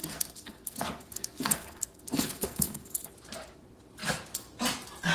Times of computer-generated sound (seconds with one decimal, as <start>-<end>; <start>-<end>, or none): 0.0-3.1